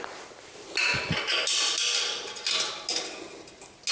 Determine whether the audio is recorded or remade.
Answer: recorded